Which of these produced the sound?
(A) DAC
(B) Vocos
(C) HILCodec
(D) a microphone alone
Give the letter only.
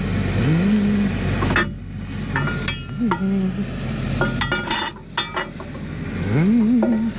D